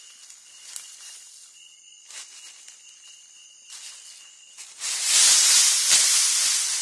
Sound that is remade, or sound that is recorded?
recorded